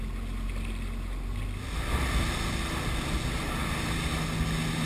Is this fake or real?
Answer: real